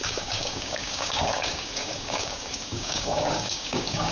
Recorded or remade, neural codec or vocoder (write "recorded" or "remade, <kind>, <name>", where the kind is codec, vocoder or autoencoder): remade, codec, DAC